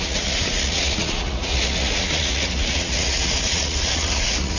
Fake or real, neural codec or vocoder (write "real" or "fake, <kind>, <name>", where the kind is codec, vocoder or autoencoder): fake, vocoder, Vocos